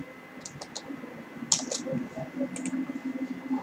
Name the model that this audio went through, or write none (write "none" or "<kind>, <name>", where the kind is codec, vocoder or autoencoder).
none